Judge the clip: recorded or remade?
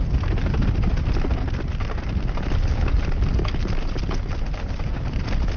recorded